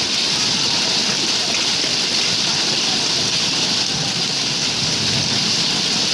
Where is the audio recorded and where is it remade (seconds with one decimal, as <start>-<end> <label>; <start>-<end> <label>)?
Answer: 0.0-6.1 recorded